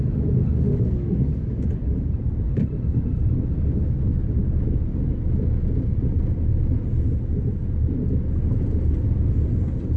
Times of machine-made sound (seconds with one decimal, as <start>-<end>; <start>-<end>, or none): 0.4-2.1